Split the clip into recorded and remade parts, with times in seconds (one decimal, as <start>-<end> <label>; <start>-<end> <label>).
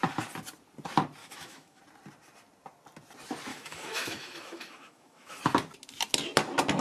0.0-1.2 recorded; 1.2-1.8 remade; 1.8-3.5 recorded; 3.5-5.4 remade; 5.4-6.8 recorded